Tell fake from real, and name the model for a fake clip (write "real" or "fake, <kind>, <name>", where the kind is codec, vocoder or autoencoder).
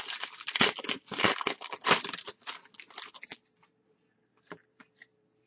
fake, vocoder, BigVGAN v2